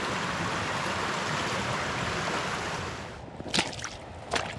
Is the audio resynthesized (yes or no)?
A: no